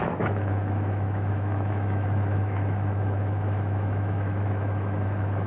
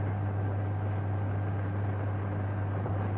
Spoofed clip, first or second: first